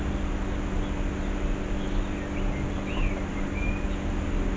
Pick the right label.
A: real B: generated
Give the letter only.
A